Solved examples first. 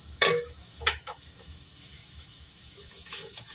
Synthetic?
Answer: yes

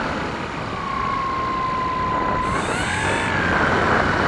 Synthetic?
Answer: no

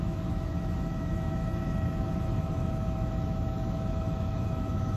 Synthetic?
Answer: yes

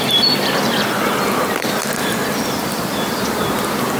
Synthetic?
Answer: yes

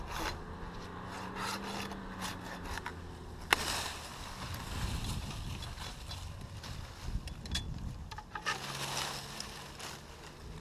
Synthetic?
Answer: no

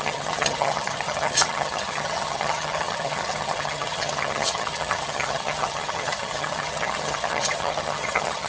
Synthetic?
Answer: yes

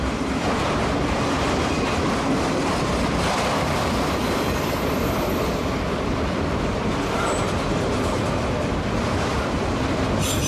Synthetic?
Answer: yes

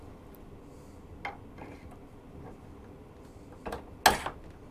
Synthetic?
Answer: no